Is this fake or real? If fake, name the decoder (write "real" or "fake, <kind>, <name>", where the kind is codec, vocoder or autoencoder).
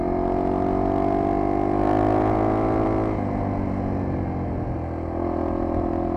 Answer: real